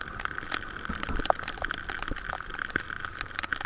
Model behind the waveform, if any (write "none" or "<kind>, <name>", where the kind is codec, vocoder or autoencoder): none